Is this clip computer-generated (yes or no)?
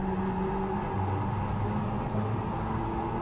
no